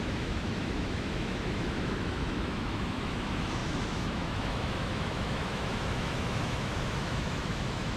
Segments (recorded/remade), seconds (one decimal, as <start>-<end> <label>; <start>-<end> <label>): 0.0-8.0 remade